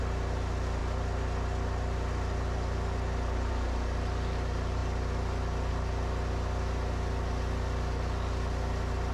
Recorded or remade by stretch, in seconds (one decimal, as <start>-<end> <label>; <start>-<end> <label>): 0.0-9.1 recorded